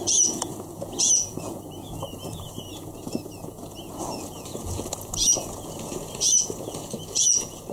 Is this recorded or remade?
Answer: remade